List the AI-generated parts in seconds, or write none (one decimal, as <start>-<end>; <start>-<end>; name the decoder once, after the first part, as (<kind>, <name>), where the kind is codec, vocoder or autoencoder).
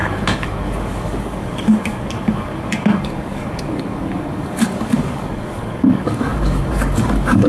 0.0-7.5 (codec, DAC)